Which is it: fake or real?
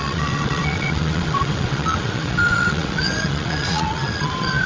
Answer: fake